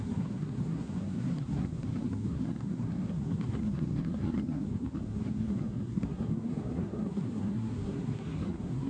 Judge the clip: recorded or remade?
remade